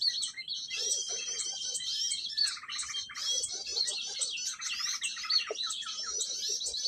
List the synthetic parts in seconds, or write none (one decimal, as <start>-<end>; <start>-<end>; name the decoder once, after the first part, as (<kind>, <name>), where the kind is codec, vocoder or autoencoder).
0.0-3.7 (vocoder, BigVGAN v2)